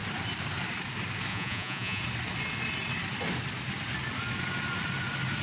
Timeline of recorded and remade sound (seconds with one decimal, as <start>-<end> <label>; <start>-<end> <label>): 0.0-1.3 recorded; 1.3-2.0 remade; 2.0-5.4 recorded